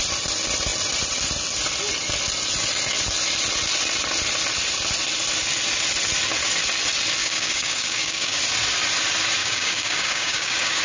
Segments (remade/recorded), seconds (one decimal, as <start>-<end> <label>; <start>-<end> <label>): 0.0-7.2 recorded; 7.2-8.4 remade; 8.4-9.4 recorded; 9.4-10.8 remade

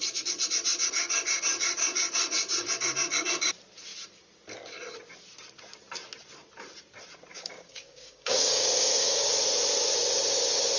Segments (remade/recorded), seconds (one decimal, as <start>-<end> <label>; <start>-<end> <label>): 0.0-7.3 recorded; 7.3-9.3 remade; 9.3-10.8 recorded

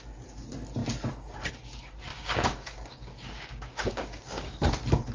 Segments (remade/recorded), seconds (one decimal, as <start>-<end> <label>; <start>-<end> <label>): 0.0-2.1 recorded; 2.1-4.5 remade; 4.5-5.1 recorded

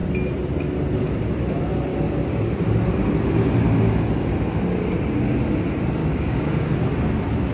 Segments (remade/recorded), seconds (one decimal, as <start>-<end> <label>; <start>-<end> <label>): 0.0-1.9 recorded; 1.9-2.5 remade; 2.5-6.0 recorded; 6.0-6.9 remade; 6.9-7.5 recorded

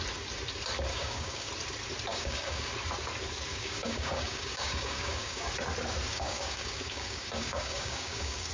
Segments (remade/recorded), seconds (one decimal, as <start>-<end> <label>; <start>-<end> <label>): 0.0-0.9 recorded; 0.9-1.5 remade; 1.5-2.1 recorded; 2.1-2.7 remade; 2.7-3.5 recorded; 3.5-5.5 remade; 5.5-6.1 recorded; 6.1-8.5 remade

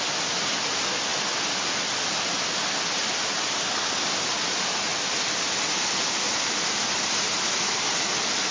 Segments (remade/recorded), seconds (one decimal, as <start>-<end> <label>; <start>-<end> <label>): 0.0-8.5 recorded

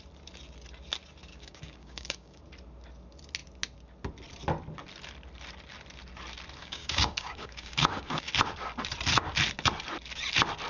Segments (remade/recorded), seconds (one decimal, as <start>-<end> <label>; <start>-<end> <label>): 0.0-1.3 recorded; 1.3-2.4 remade; 2.4-6.6 recorded; 6.6-8.3 remade; 8.3-10.7 recorded